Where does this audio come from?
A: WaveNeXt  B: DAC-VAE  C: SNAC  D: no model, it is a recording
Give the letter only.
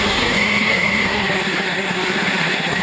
C